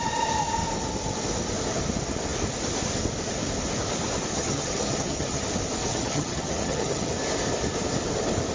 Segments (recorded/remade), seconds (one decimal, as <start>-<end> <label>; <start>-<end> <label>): 0.0-4.3 recorded; 4.3-5.5 remade; 5.5-5.9 recorded; 5.9-7.1 remade; 7.1-8.5 recorded